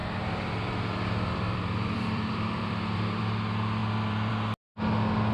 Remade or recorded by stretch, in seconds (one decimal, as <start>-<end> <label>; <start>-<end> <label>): 0.0-3.2 remade; 3.2-3.8 recorded; 3.8-4.3 remade; 4.3-5.3 recorded